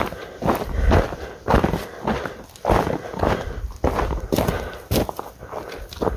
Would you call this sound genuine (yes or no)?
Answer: yes